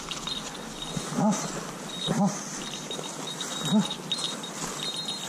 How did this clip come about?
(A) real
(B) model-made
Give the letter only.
A